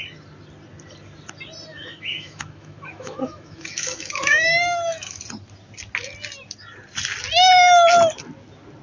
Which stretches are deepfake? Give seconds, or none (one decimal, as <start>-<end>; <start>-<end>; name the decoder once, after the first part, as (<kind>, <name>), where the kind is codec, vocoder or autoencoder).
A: 1.7-5.2 (autoencoder, DAC-VAE)